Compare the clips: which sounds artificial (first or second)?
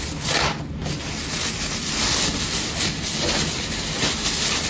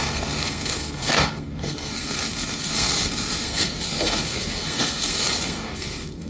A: second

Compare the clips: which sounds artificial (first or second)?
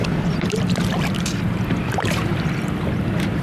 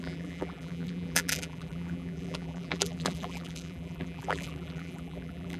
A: second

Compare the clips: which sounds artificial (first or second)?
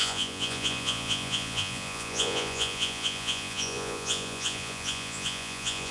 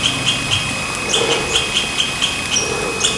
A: first